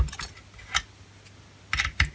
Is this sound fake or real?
real